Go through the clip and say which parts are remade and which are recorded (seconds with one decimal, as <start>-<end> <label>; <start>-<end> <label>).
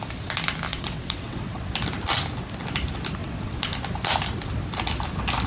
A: 0.0-0.7 recorded; 0.7-1.7 remade; 1.7-3.2 recorded; 3.2-3.7 remade; 3.7-5.5 recorded